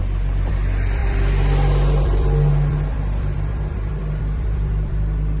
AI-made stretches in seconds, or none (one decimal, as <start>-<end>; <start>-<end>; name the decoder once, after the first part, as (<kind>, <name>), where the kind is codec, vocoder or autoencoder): 0.5-5.4 (vocoder, BigVGAN v2)